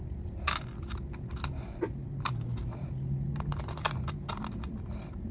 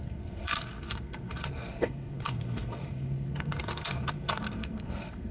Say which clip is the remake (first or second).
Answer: second